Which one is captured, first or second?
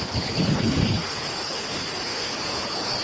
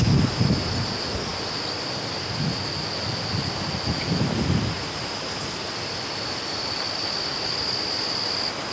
second